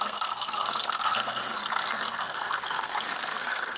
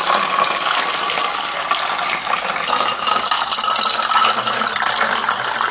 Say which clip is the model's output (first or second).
first